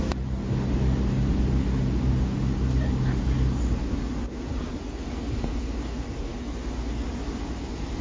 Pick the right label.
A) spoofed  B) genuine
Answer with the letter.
B